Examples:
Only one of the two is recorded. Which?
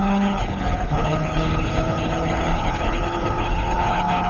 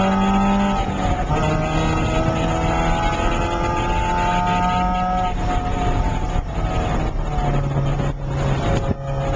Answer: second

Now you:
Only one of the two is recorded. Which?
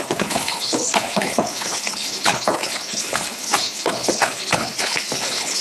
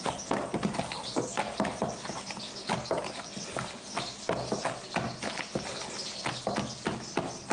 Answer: second